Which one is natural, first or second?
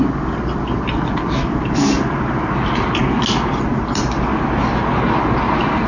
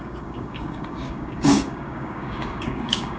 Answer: first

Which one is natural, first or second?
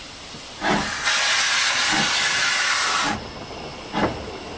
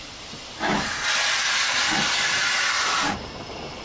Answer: first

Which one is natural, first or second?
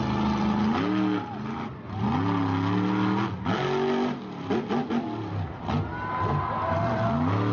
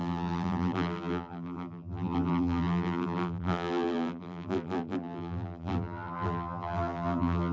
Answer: first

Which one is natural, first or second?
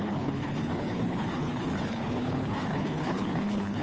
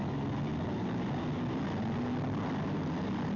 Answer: second